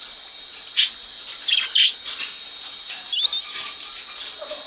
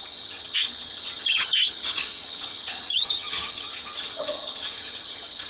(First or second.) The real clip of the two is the first